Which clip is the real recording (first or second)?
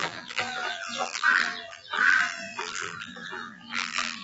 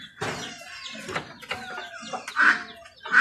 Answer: second